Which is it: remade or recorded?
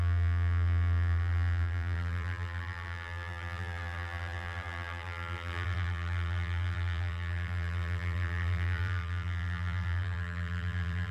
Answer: remade